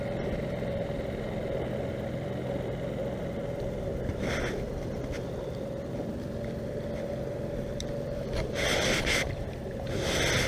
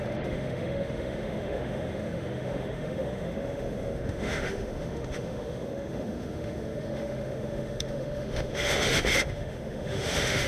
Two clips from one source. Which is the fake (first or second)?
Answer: second